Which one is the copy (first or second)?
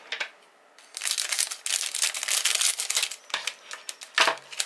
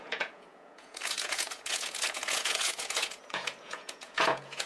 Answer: second